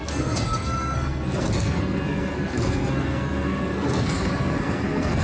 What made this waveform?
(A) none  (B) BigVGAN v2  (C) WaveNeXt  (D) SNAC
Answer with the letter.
D